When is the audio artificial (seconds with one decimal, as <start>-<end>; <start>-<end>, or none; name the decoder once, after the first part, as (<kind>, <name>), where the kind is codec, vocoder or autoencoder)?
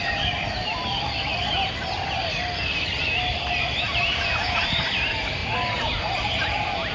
0.0-1.3 (vocoder, BigVGAN v2); 3.6-5.4; 6.0-6.9